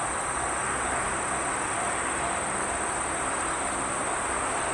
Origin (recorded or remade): recorded